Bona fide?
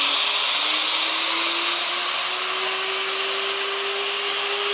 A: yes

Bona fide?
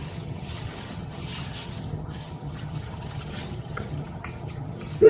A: no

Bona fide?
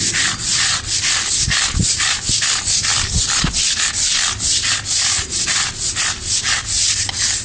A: yes